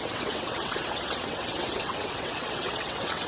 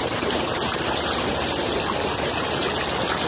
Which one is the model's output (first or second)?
first